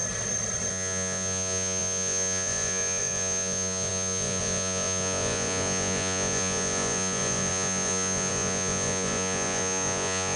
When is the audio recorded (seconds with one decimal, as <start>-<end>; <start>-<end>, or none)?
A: 0.0-0.7